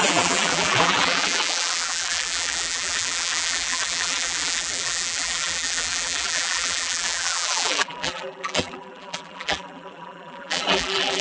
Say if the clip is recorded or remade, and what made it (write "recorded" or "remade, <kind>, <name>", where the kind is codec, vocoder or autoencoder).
remade, vocoder, BigVGAN v2